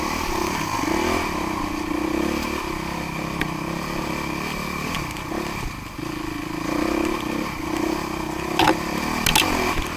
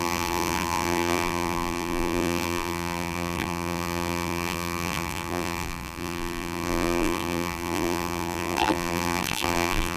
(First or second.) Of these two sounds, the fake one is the second